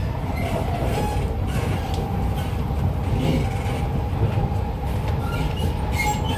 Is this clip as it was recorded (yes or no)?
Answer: yes